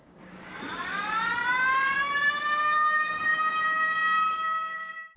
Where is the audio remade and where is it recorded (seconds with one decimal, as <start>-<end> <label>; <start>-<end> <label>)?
0.0-5.2 remade